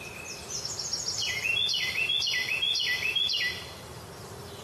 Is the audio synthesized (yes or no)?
no